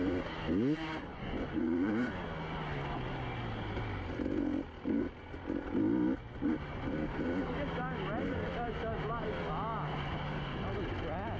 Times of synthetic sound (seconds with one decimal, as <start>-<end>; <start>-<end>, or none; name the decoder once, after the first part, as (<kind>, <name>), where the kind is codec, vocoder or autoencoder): 1.1-1.9 (vocoder, Vocos)